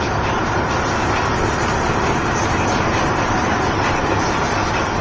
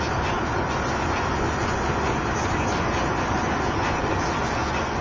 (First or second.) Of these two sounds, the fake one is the second